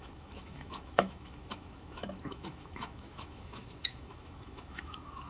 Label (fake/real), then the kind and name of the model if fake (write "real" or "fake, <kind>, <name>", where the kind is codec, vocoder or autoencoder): fake, autoencoder, DAC-VAE